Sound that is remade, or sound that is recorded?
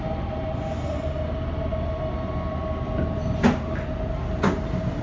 recorded